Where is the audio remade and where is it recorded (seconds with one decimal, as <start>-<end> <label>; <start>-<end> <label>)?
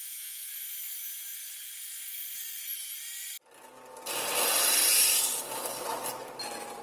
0.0-0.5 remade; 0.5-6.8 recorded